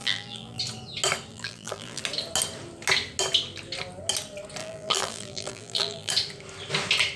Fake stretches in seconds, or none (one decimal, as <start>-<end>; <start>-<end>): 0.0-0.6; 1.3-2.0; 4.6-6.1